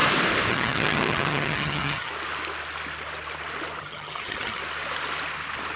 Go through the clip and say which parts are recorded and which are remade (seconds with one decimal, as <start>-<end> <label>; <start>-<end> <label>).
0.0-0.5 recorded; 0.5-2.1 remade; 2.1-3.8 recorded; 3.8-4.6 remade; 4.6-5.8 recorded